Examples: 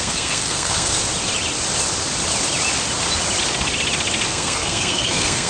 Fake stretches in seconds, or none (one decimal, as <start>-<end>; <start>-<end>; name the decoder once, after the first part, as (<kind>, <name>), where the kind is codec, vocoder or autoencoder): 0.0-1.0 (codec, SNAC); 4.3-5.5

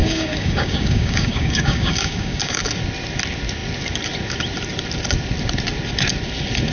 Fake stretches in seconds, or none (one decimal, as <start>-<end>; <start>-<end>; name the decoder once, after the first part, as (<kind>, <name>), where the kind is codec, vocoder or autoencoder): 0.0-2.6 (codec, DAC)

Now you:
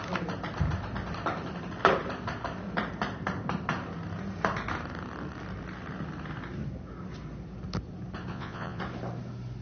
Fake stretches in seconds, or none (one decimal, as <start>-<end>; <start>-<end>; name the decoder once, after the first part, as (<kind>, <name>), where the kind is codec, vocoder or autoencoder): 8.3-8.8 (vocoder, Vocos)

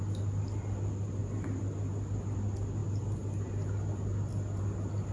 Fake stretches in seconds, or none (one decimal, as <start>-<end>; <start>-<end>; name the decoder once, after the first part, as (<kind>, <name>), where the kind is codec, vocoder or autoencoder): none

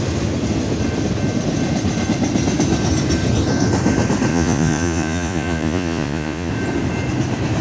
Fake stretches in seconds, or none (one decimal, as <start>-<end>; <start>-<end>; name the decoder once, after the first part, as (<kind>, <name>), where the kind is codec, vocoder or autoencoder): 4.3-6.5 (vocoder, Vocos)

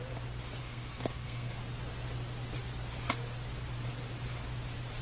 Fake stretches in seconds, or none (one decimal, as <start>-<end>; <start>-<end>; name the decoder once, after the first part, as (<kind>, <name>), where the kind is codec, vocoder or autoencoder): 0.6-1.6 (codec, SNAC)